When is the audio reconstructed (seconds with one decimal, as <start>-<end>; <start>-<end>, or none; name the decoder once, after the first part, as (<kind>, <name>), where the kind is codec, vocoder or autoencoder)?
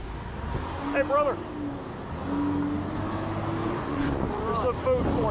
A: 3.6-4.4 (vocoder, Vocos)